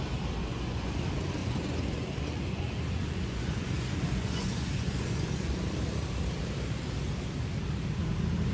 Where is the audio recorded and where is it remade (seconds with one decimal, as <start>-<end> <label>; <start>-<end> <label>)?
0.0-0.4 recorded; 0.4-0.9 remade; 0.9-1.4 recorded; 1.4-5.5 remade; 5.5-8.5 recorded